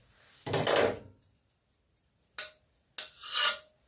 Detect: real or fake real